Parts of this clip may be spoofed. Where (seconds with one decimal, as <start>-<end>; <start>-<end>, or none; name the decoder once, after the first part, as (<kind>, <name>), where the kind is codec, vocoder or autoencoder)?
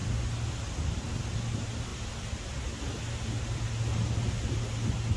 none